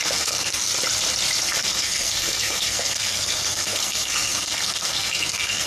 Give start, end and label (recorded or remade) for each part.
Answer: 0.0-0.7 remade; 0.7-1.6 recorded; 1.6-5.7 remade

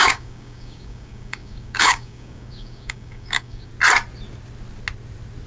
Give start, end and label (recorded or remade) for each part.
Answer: 0.0-3.7 remade; 3.7-5.5 recorded

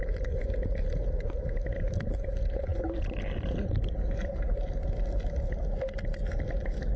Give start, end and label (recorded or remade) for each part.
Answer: 0.0-7.0 recorded